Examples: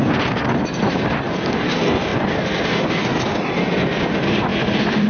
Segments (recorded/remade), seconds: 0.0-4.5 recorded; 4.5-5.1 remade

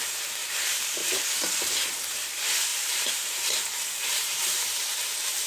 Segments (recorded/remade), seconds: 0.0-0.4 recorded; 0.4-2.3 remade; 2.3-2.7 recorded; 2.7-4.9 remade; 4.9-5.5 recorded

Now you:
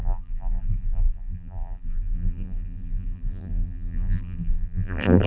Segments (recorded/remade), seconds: 0.0-5.3 remade

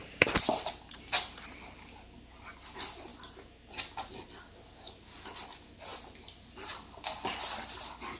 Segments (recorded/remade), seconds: 0.0-8.2 recorded

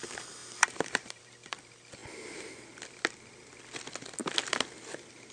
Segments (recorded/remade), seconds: 0.0-0.4 recorded; 0.4-1.2 remade; 1.2-5.3 recorded

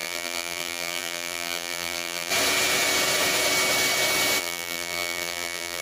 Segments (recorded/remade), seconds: 0.0-2.3 remade; 2.3-4.4 recorded; 4.4-5.8 remade